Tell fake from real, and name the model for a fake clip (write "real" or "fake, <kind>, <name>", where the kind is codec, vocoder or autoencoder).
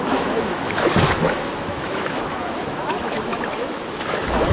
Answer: fake, autoencoder, DAC-VAE